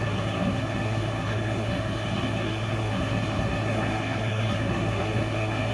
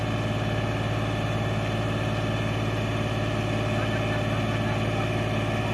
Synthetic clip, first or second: first